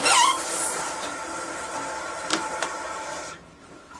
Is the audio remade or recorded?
remade